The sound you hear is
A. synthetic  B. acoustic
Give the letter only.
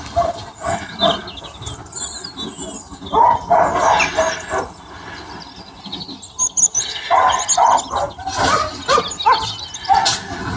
B